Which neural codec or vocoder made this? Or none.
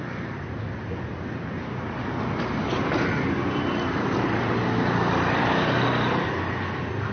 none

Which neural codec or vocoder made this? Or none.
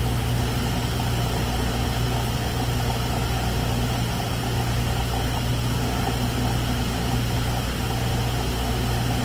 none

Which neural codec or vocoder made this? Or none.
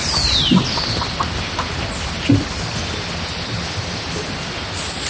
none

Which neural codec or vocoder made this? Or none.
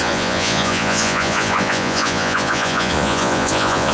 vocoder, Vocos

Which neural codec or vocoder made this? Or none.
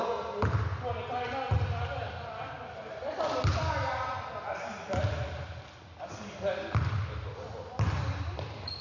none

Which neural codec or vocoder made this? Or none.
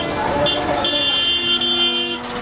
none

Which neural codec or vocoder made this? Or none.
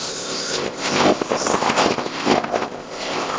codec, ZipCodec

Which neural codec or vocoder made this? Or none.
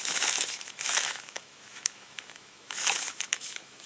autoencoder, DAC-VAE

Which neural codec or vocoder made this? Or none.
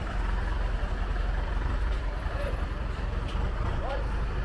vocoder, BigVGAN v2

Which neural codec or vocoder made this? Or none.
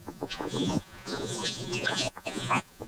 vocoder, Vocos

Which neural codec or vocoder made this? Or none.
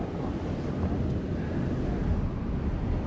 none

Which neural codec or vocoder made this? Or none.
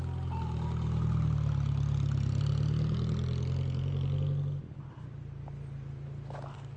none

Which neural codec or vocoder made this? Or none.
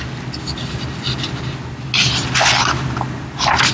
none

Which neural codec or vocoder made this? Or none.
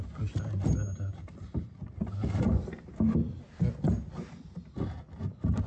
none